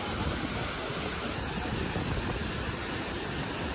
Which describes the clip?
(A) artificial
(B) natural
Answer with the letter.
B